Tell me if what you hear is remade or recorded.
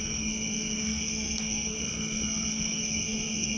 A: remade